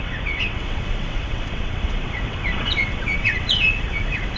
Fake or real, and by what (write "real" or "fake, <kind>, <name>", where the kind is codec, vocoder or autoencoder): fake, vocoder, WaveNeXt